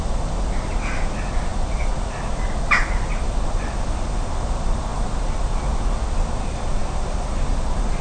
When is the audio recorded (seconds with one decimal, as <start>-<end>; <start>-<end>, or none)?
0.0-8.0